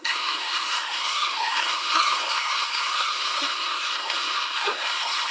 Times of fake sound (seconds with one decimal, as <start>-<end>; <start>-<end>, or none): 0.0-5.3